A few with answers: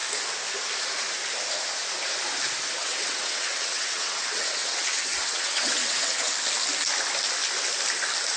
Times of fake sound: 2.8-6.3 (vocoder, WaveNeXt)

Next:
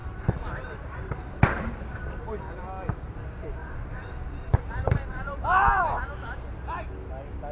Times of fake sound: 0.0-2.2 (vocoder, BigVGAN v2); 3.6-5.8

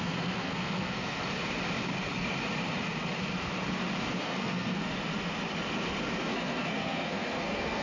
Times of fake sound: 0.0-1.2 (codec, SNAC); 4.2-4.8; 6.2-7.8

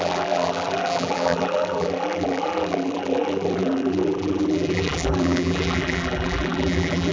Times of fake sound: 0.0-7.1 (vocoder, BigVGAN v2)

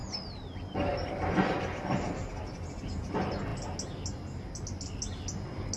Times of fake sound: none

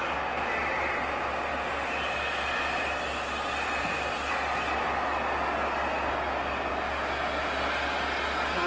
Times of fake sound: none

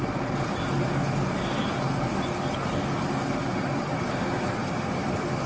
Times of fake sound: none